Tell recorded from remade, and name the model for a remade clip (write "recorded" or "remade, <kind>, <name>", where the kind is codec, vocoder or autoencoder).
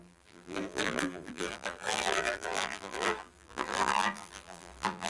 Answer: remade, vocoder, BigVGAN v2